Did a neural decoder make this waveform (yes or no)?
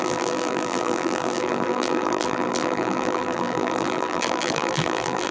yes